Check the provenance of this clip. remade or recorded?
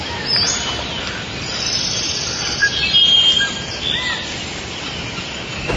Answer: recorded